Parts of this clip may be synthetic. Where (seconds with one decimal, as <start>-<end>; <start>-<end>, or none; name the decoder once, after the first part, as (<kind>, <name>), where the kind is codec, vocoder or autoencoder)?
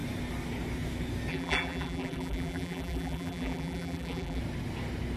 1.3-4.4 (vocoder, BigVGAN v2)